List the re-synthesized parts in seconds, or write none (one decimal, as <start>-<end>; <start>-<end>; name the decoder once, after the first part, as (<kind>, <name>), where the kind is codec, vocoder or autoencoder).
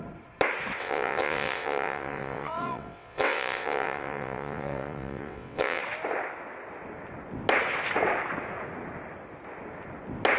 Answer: 0.8-5.8 (vocoder, WaveNeXt)